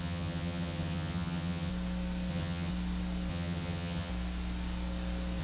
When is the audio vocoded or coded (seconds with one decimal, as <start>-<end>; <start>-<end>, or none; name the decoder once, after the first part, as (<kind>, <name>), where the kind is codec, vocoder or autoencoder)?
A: 0.0-1.7 (vocoder, HiFi-GAN); 2.3-2.7; 3.3-4.1